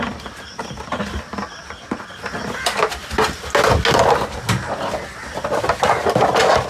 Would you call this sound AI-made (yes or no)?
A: no